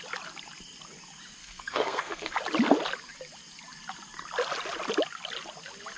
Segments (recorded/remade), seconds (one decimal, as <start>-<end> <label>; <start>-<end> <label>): 0.0-1.4 recorded; 1.4-2.3 remade; 2.3-6.0 recorded